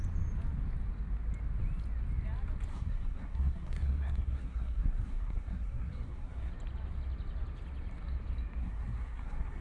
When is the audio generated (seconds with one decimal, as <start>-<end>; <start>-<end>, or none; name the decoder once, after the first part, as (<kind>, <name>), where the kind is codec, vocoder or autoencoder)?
2.7-6.5 (codec, SNAC); 8.6-9.6